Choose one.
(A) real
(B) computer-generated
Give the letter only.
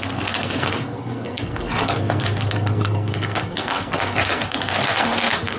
B